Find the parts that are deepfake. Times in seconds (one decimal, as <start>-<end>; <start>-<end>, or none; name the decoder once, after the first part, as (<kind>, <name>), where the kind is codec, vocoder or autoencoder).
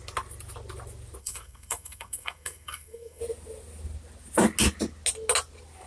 1.2-3.2 (codec, SNAC)